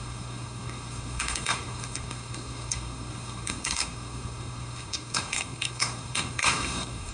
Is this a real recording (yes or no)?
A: no